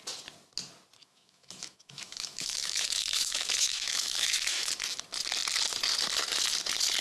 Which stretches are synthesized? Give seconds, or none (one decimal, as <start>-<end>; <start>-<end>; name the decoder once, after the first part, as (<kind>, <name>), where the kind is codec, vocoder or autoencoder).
1.0-4.7 (autoencoder, DAC-VAE)